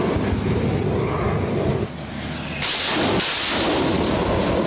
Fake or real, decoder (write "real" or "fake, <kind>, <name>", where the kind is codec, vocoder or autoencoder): real